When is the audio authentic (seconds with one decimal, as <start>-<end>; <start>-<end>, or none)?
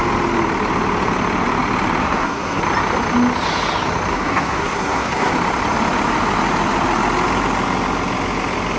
0.0-2.0; 2.6-4.1; 5.3-8.8